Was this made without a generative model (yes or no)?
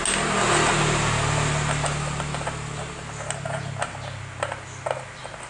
yes